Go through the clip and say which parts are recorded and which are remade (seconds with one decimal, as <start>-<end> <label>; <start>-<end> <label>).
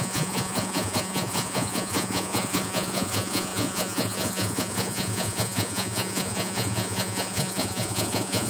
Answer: 0.0-8.5 remade